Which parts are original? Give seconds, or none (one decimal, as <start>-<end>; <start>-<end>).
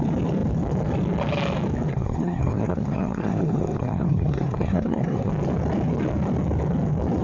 0.0-1.9; 5.3-7.2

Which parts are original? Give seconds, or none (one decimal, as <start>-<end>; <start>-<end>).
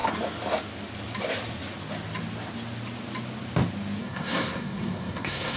0.0-4.0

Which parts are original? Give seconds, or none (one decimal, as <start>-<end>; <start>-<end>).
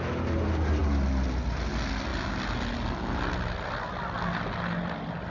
0.0-5.3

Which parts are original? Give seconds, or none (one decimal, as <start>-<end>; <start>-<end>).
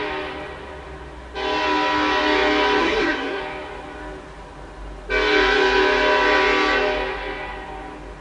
0.0-2.8; 3.4-8.2